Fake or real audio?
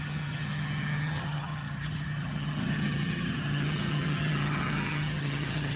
fake